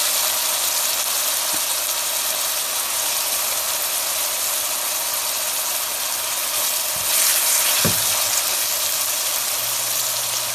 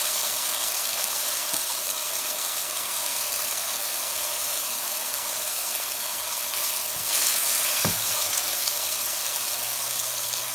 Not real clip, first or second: second